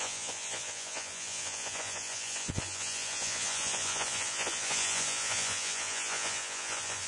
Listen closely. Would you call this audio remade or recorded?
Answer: remade